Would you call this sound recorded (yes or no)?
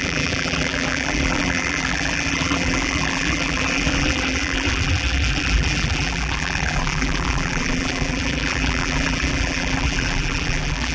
no